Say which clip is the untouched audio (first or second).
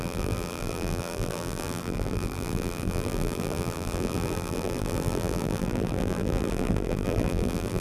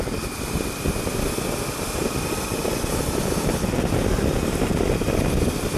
second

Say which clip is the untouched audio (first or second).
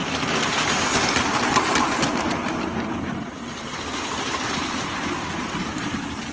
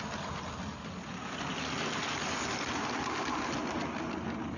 second